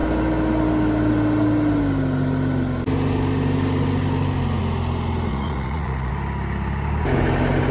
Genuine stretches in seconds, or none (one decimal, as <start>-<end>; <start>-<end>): 0.0-5.3; 6.1-7.7